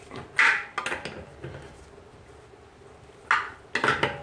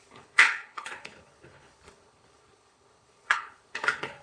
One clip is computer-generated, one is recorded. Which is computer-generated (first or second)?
second